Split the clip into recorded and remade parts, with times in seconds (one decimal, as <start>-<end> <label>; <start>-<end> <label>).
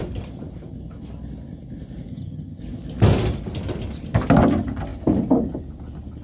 0.0-2.1 recorded; 2.1-2.6 remade; 2.6-6.2 recorded